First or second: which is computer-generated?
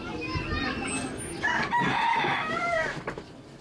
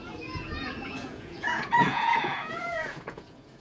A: second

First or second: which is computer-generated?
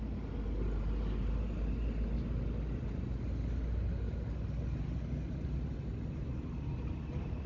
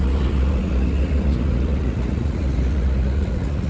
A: second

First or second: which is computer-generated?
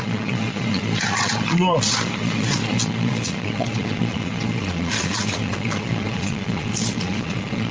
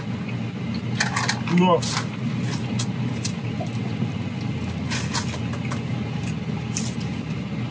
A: first